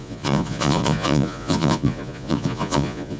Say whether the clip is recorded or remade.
remade